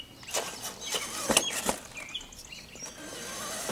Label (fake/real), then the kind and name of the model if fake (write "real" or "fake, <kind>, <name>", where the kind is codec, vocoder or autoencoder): real